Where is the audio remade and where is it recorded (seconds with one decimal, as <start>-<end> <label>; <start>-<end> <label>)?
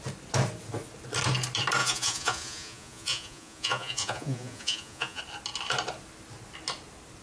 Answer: 0.0-1.8 recorded; 1.8-5.2 remade; 5.2-7.2 recorded